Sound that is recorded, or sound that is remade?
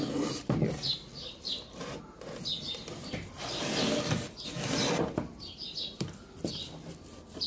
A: recorded